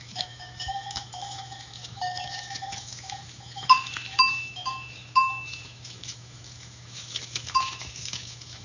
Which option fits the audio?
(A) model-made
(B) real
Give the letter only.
A